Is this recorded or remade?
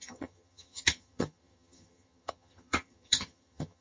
remade